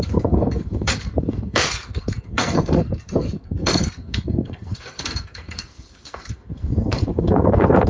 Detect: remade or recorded remade